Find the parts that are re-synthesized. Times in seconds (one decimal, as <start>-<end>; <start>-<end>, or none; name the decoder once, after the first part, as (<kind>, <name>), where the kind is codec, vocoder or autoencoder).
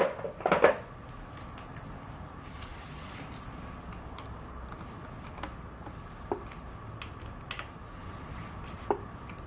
none